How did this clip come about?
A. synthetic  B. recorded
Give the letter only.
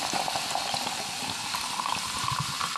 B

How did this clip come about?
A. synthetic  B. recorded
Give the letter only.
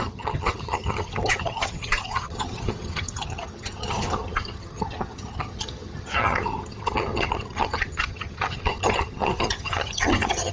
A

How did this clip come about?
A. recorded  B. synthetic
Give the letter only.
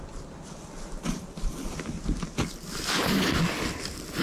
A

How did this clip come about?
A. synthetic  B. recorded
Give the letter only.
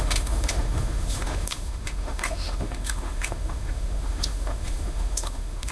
A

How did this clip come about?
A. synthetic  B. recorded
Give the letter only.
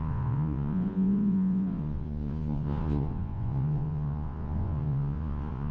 A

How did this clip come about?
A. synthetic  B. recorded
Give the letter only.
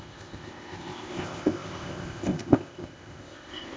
A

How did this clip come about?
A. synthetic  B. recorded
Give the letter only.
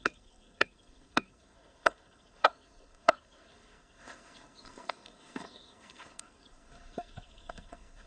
A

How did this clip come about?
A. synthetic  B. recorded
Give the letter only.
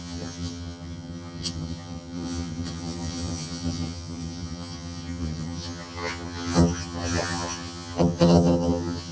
A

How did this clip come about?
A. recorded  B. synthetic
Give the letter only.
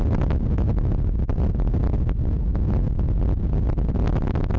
A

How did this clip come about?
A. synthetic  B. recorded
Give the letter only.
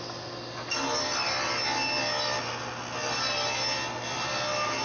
B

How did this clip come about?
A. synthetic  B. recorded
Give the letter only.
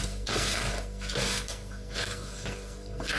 A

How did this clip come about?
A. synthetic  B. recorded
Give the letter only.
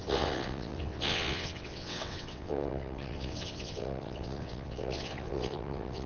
A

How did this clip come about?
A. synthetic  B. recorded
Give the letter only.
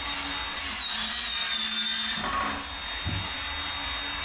B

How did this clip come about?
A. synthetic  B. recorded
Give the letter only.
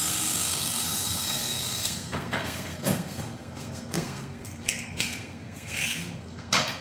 A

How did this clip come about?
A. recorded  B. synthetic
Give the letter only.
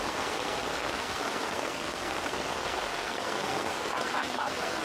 B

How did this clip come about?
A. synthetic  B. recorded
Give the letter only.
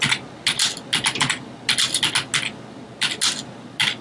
B